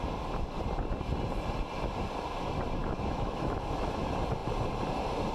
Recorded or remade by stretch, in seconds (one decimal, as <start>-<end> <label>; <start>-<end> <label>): 0.0-2.8 recorded; 2.8-4.0 remade; 4.0-5.3 recorded

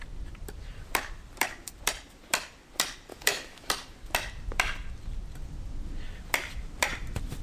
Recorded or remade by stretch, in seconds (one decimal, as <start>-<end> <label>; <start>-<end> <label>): 0.0-3.1 recorded; 3.1-3.7 remade; 3.7-7.4 recorded